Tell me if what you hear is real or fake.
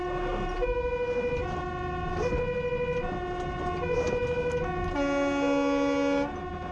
real